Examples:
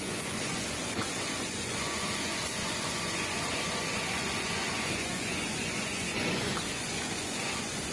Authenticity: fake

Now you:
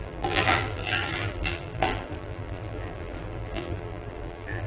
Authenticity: fake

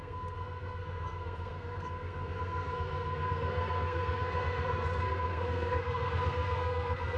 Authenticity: fake